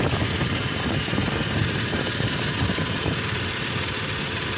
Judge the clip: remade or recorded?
recorded